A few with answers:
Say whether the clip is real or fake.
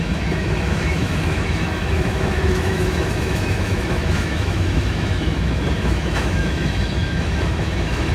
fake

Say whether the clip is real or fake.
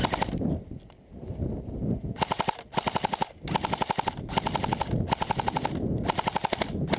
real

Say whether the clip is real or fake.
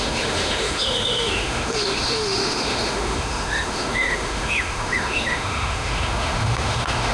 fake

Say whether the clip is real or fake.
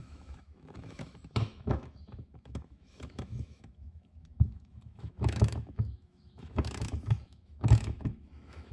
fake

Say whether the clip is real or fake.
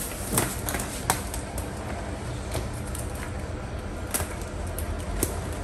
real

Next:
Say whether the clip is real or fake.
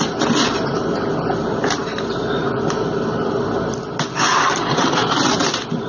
real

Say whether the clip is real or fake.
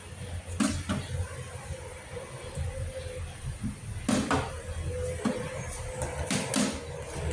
real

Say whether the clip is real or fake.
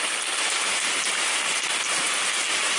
real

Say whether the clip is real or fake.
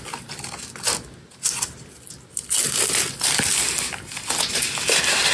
real